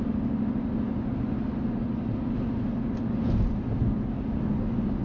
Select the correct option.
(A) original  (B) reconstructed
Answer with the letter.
A